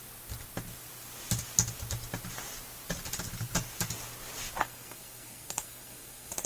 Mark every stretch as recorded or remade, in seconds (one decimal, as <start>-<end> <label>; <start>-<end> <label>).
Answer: 0.0-4.6 recorded; 4.6-6.5 remade